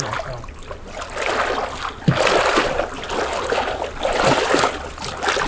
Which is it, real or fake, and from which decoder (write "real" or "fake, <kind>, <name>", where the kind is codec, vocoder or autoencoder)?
real